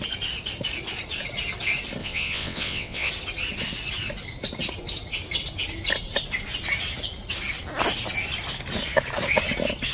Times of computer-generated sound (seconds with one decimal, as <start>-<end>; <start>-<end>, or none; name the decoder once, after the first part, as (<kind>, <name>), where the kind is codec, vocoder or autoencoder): 2.0-3.1 (vocoder, WaveNeXt)